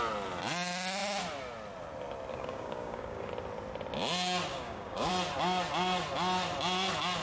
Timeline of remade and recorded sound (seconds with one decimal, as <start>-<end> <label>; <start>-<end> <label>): 0.0-2.3 recorded; 2.3-3.3 remade; 3.3-4.5 recorded; 4.5-5.1 remade; 5.1-7.2 recorded